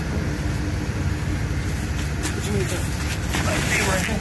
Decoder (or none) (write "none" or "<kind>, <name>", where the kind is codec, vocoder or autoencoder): none